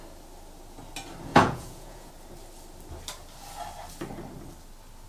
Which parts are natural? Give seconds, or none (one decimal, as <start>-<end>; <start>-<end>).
0.0-1.3; 2.1-5.1